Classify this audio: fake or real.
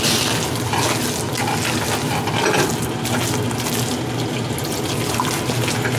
real